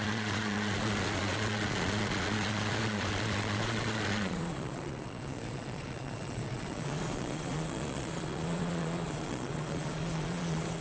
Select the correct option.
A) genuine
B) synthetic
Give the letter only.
B